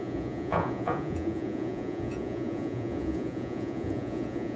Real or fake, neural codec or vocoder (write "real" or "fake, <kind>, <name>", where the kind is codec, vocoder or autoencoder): fake, vocoder, Vocos